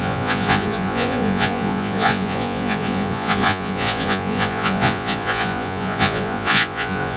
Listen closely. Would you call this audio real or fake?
fake